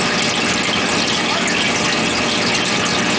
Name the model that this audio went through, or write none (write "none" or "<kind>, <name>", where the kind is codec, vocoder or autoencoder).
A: none